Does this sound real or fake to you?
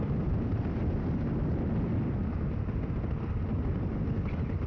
real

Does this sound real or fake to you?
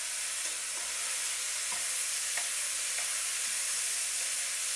real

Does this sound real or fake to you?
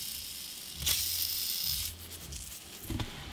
real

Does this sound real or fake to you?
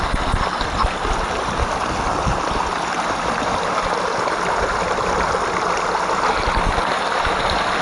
real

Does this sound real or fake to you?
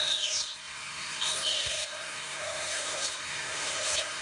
fake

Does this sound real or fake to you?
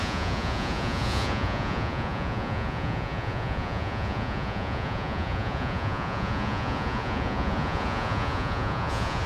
fake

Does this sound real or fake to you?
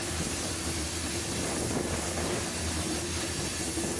real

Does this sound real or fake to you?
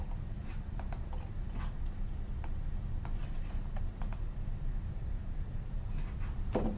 fake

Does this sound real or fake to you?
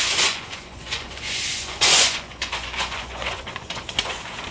fake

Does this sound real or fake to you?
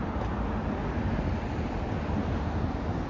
real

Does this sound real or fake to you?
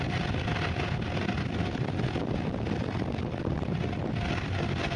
real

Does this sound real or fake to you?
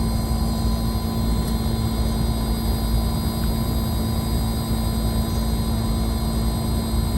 real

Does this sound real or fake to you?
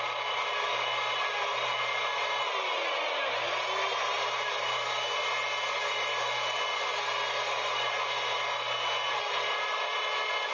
real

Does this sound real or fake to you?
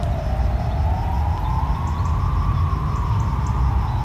real